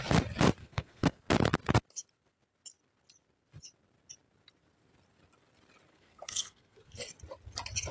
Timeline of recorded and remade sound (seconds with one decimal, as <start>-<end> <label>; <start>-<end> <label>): 0.0-0.6 recorded; 0.6-1.2 remade; 1.2-5.9 recorded; 5.9-7.0 remade; 7.0-7.9 recorded